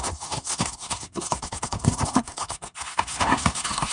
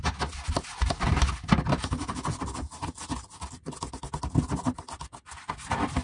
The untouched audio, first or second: second